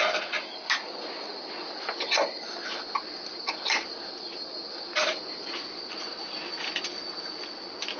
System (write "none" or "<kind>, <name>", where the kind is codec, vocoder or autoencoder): none